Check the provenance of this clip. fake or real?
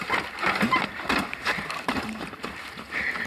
real